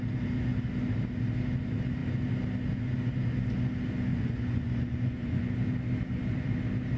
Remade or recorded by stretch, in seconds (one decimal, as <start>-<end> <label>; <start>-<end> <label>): 0.0-4.1 recorded; 4.1-5.5 remade; 5.5-7.0 recorded